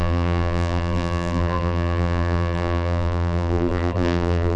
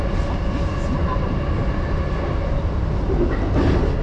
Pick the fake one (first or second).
first